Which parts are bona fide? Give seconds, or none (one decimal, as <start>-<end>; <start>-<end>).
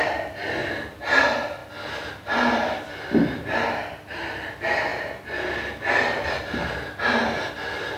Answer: 0.6-1.2; 1.6-2.1